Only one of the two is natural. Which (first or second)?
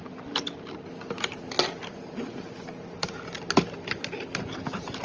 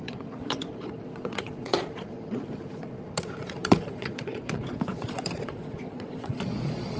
first